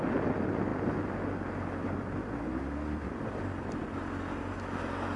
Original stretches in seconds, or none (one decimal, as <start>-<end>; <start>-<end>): 0.0-5.2